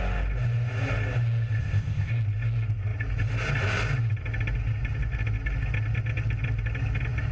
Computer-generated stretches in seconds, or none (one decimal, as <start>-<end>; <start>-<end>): 1.6-2.1